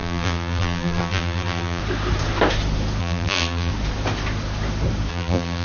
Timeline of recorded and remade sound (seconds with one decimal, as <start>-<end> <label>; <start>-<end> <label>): 0.0-1.8 remade; 1.8-3.0 recorded; 3.0-3.7 remade; 3.7-5.1 recorded; 5.1-5.6 remade